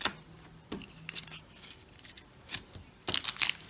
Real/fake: real